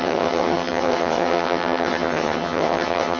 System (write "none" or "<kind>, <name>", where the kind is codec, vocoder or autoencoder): vocoder, HiFi-GAN